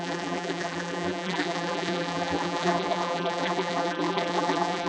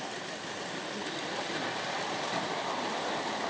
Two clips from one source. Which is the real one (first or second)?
second